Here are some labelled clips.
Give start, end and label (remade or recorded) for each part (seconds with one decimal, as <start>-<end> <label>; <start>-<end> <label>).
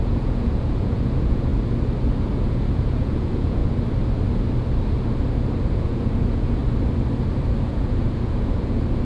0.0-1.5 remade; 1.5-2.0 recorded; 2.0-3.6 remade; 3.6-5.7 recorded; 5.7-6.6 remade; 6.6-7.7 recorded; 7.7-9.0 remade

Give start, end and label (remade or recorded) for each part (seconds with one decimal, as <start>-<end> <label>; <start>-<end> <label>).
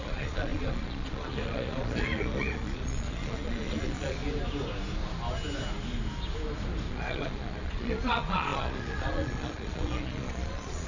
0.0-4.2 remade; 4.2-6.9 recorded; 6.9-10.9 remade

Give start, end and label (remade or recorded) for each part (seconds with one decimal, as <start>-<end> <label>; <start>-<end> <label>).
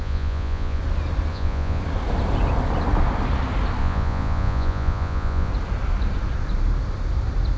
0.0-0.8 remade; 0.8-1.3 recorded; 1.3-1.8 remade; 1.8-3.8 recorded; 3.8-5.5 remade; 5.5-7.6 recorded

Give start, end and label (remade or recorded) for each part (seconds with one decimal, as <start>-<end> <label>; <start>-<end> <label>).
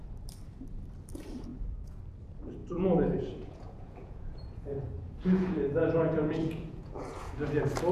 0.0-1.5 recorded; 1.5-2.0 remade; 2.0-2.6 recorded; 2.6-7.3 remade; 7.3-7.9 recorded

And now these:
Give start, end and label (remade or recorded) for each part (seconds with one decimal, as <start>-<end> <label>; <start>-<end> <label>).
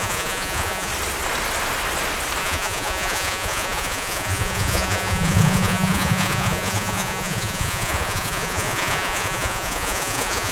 0.0-0.9 remade; 0.9-2.4 recorded; 2.4-10.5 remade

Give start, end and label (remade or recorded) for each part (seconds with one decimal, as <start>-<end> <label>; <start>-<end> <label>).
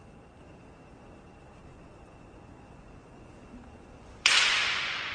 0.0-1.7 recorded; 1.7-5.1 remade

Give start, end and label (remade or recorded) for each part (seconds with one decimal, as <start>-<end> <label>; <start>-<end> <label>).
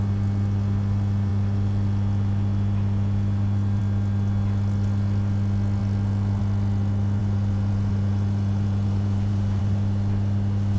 0.0-7.2 recorded; 7.2-9.6 remade; 9.6-10.8 recorded